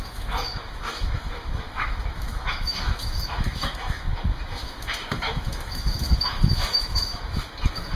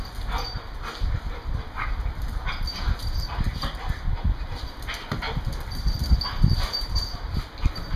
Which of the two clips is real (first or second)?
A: second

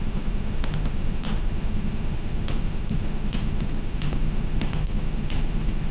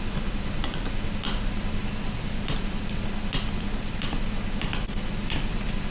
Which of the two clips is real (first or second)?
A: second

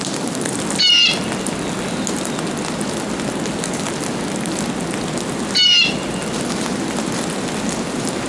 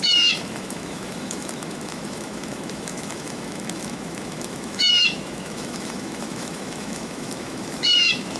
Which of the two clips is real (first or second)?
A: first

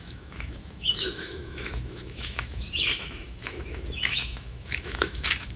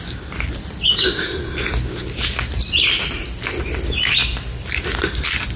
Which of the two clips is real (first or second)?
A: second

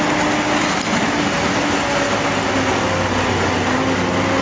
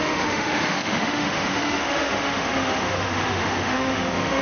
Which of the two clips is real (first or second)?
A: first